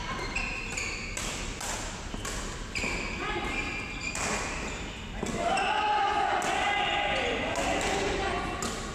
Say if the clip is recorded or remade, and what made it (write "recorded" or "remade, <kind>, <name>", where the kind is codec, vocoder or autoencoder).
recorded